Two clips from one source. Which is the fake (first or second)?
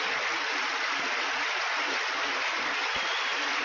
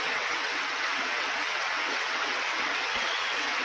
second